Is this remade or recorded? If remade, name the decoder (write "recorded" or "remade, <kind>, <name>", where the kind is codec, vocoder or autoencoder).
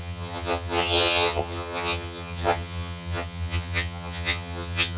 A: remade, vocoder, HiFi-GAN